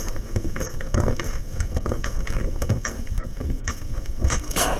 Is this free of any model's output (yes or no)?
no